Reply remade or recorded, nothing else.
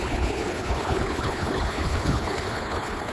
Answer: remade